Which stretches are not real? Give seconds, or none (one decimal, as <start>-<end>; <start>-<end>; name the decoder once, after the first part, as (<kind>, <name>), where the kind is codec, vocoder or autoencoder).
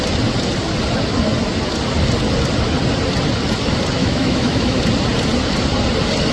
4.0-4.8 (autoencoder, DAC-VAE)